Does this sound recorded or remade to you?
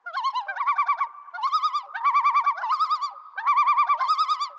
recorded